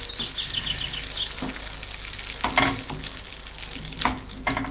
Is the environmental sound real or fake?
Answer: real